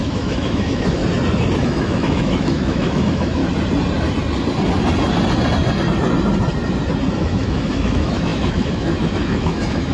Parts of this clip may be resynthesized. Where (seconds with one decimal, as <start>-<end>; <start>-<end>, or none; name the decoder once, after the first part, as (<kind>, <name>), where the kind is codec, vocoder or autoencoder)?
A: 0.0-1.0 (autoencoder, DAC-VAE); 1.6-3.4; 7.2-9.9